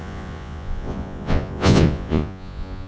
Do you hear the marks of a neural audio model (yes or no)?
yes